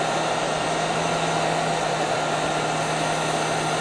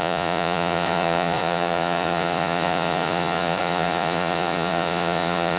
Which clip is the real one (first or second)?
first